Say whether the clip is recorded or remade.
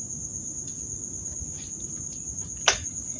recorded